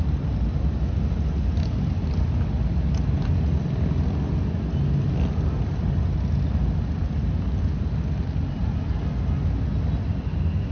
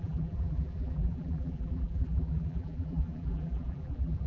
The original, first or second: first